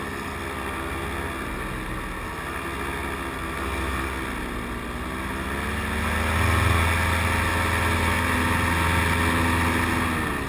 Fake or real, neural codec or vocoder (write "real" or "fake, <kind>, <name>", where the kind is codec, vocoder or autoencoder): real